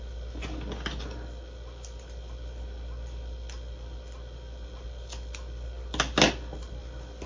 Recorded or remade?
recorded